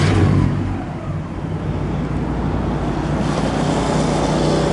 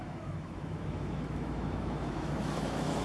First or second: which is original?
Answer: first